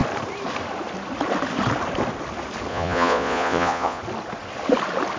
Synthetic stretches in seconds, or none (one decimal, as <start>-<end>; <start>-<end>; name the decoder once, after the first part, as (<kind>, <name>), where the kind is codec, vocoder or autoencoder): 2.7-4.0 (vocoder, Vocos)